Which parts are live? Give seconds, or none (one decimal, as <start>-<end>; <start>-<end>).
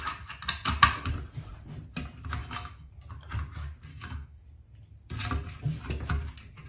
0.0-2.4; 2.9-3.9; 4.4-6.7